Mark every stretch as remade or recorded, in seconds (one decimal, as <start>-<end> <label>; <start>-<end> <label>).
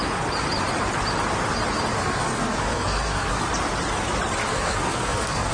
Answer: 0.0-2.0 recorded; 2.0-3.3 remade; 3.3-4.4 recorded; 4.4-5.5 remade